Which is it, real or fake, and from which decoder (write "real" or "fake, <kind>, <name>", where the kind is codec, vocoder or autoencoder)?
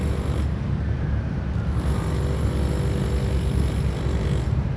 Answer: real